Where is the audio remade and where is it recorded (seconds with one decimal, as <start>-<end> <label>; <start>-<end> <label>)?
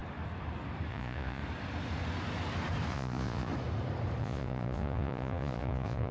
0.0-0.9 recorded; 0.9-1.4 remade; 1.4-2.9 recorded; 2.9-3.5 remade; 3.5-4.2 recorded; 4.2-6.1 remade